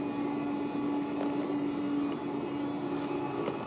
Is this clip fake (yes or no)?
no